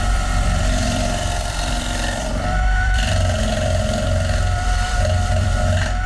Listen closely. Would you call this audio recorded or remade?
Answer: remade